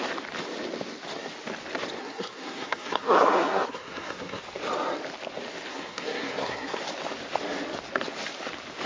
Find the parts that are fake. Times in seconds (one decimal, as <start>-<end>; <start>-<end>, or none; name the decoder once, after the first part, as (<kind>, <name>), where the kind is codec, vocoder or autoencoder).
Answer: 2.0-4.4 (codec, SNAC); 5.7-6.8